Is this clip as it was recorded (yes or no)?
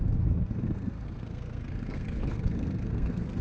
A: no